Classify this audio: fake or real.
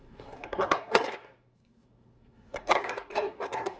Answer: fake